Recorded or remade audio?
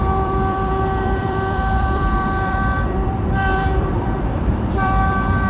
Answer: remade